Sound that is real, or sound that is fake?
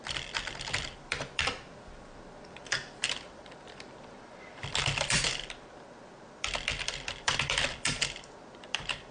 fake